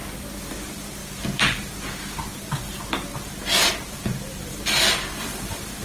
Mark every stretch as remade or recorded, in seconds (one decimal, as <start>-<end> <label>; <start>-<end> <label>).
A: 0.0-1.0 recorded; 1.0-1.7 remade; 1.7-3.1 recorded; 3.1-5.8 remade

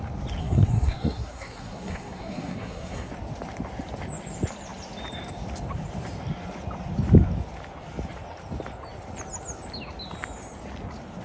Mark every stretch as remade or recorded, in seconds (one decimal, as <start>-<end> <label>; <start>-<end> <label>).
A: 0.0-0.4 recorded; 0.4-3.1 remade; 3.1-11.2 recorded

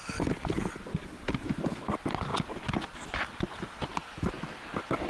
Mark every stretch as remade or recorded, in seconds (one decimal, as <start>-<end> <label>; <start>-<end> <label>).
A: 0.0-5.1 recorded

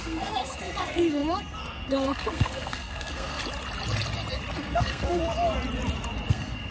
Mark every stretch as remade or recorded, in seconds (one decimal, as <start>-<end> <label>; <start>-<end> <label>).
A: 0.0-3.4 remade; 3.4-4.5 recorded; 4.5-5.2 remade; 5.2-6.3 recorded; 6.3-6.7 remade